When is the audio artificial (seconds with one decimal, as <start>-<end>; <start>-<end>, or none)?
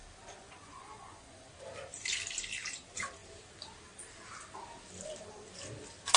0.4-1.5